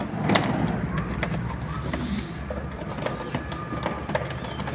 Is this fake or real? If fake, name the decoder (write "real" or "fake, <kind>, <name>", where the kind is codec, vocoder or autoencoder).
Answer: real